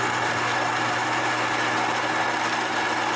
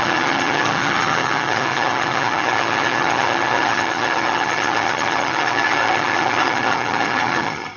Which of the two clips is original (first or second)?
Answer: first